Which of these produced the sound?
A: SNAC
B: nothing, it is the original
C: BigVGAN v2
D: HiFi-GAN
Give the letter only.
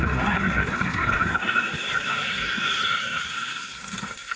A